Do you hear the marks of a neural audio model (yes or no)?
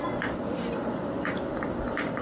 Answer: no